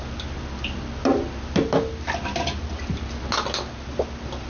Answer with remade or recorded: recorded